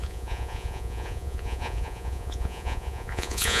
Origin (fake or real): fake